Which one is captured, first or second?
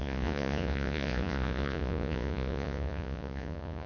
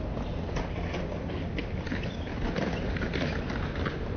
second